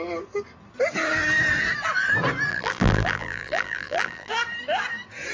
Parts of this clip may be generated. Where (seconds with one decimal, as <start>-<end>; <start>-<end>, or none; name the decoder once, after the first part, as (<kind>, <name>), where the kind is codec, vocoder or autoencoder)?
2.5-4.3 (vocoder, BigVGAN v2)